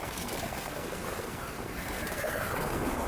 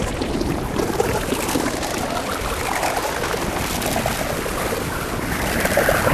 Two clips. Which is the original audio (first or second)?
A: second